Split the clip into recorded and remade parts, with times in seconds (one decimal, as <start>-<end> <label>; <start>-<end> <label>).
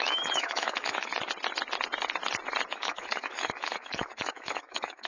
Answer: 0.0-1.1 remade; 1.1-2.7 recorded; 2.7-5.1 remade